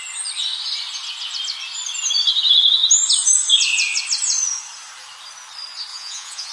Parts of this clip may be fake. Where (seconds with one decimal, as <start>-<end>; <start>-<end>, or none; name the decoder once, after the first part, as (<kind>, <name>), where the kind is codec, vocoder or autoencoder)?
5.9-6.5 (vocoder, Vocos)